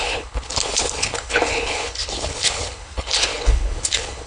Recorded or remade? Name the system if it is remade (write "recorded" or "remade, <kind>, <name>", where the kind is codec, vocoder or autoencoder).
remade, codec, HILCodec